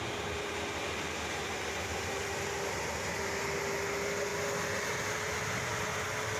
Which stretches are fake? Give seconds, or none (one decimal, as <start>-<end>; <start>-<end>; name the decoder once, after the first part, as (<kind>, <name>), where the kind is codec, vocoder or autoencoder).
4.3-5.5 (vocoder, BigVGAN v2)

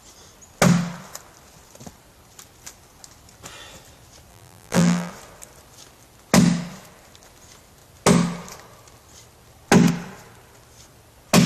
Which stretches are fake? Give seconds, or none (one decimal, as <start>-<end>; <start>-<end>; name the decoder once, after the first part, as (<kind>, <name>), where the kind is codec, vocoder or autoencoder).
4.3-5.1 (vocoder, BigVGAN v2)